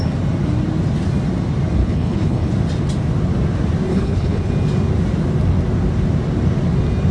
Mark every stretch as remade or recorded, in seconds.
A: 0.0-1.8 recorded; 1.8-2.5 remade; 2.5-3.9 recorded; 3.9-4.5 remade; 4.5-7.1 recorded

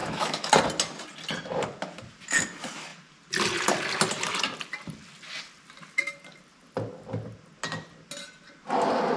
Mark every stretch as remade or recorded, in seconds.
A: 0.0-0.5 remade; 0.5-9.2 recorded